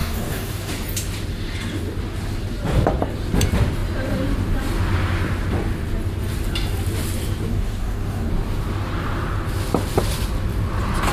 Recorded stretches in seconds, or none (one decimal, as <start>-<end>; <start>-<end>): 0.7-7.5; 8.3-11.1